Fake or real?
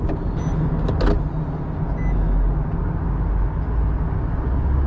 real